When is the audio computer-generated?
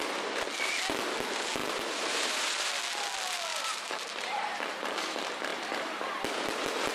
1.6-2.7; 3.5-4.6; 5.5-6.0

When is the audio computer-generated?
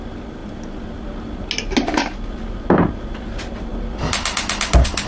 none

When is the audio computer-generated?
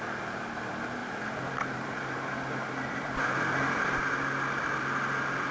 1.0-3.4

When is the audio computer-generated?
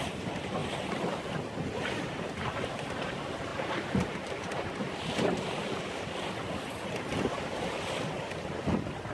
0.0-0.6; 2.9-9.1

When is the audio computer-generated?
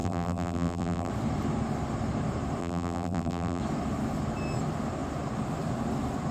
0.0-1.1; 2.6-3.6